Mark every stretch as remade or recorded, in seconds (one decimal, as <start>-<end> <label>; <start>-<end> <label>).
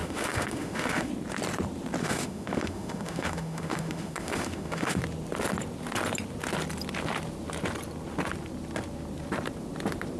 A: 0.0-1.1 remade; 1.1-2.0 recorded; 2.0-5.0 remade; 5.0-10.2 recorded